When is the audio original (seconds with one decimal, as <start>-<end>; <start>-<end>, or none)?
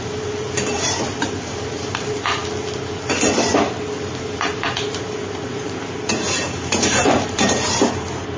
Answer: 2.4-4.2